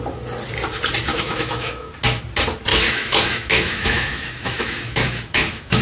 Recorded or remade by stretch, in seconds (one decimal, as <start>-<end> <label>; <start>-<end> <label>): 0.0-1.1 recorded; 1.1-1.9 remade; 1.9-2.7 recorded; 2.7-5.8 remade